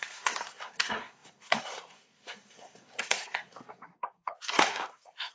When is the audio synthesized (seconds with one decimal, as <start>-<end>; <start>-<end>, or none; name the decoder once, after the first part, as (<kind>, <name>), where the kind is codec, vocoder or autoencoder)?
0.0-5.3 (codec, SNAC)